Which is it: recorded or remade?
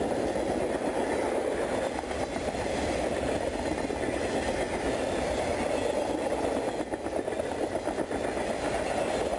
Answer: recorded